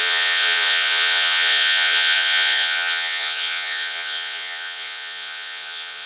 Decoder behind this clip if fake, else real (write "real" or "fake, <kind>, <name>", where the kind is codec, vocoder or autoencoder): fake, vocoder, Vocos